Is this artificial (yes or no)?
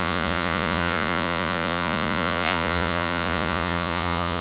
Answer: yes